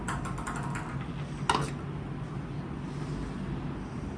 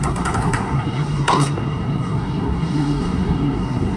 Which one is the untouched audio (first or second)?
first